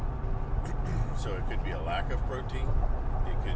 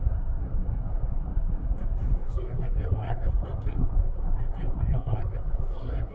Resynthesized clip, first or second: second